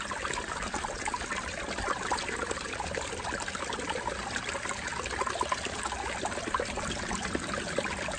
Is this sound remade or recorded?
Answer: recorded